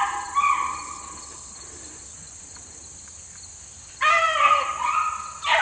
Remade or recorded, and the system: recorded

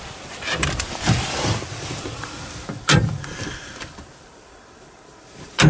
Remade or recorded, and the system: remade, vocoder, BigVGAN v2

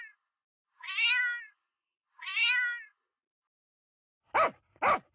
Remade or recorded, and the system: recorded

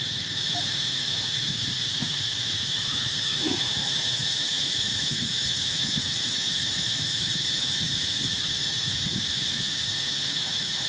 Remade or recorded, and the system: remade, autoencoder, DAC-VAE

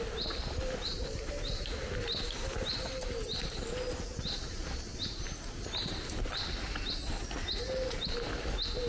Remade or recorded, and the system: recorded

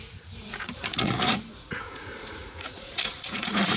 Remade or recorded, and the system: remade, vocoder, Vocos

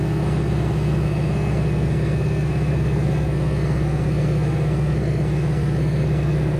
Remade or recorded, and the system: remade, codec, SNAC